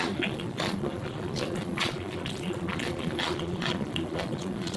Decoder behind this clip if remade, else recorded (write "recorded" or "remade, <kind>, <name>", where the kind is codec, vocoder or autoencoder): remade, vocoder, Vocos